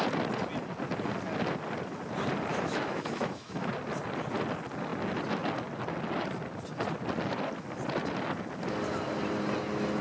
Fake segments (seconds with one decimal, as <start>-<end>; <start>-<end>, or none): 2.5-3.7